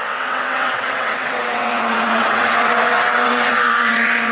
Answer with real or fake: fake